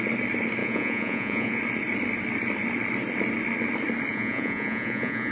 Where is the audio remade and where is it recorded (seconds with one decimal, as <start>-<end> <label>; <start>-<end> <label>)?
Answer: 0.0-0.6 recorded; 0.6-1.6 remade; 1.6-4.1 recorded; 4.1-5.3 remade